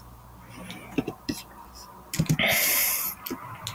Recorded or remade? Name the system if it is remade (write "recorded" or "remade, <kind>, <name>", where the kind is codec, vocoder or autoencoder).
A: recorded